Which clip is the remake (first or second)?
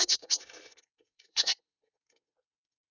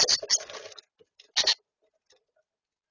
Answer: first